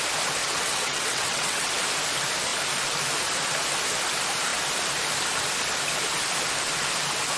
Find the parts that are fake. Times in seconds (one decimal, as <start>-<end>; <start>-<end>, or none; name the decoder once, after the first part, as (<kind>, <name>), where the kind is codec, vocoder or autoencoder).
0.4-1.7 (vocoder, WaveNeXt)